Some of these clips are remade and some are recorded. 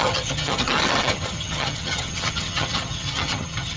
remade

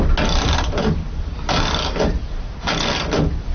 recorded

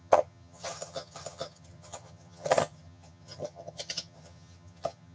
remade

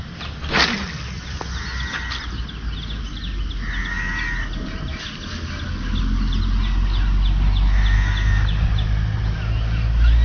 recorded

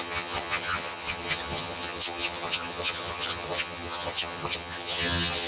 remade